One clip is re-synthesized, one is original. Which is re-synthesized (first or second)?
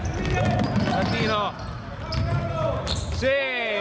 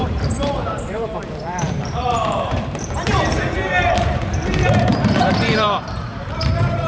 second